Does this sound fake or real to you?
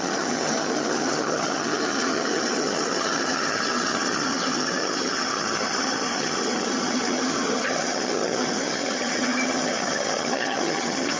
fake